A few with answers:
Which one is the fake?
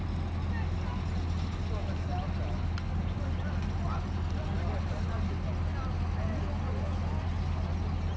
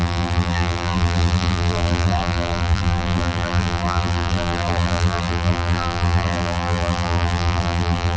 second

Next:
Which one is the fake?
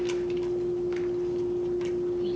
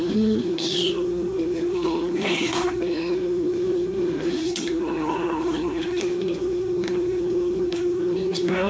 second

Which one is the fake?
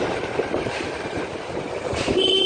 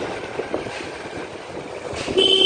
first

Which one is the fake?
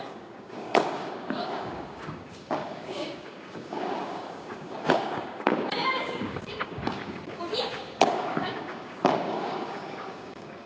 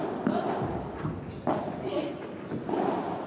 first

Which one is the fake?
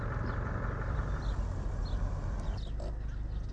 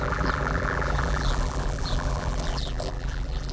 second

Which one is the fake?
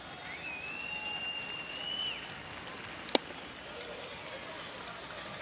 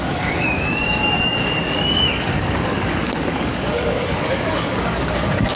second